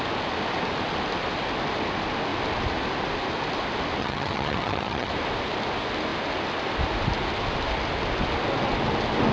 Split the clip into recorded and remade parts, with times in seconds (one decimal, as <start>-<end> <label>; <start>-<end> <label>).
0.0-4.0 recorded; 4.0-5.1 remade; 5.1-9.3 recorded